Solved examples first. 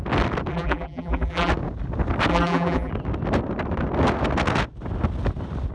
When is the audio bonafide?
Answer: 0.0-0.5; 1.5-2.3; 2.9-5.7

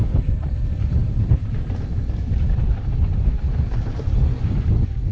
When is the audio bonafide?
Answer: 0.0-1.0; 4.1-5.1

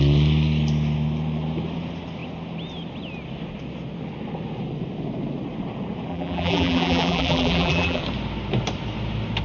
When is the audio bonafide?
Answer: 0.0-6.1; 8.0-9.4